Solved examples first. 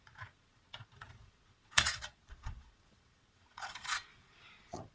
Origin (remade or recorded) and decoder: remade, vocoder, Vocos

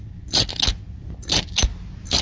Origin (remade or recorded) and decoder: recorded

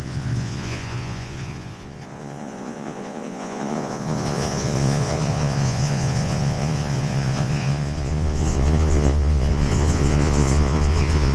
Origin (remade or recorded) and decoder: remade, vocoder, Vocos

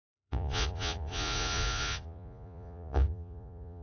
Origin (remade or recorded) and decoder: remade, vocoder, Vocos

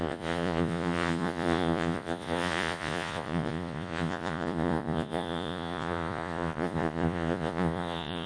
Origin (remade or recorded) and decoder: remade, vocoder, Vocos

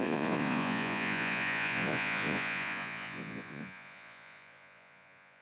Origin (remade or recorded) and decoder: remade, vocoder, Vocos